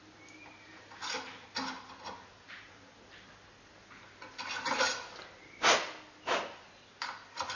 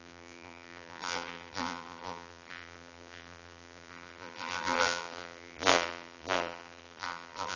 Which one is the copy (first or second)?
second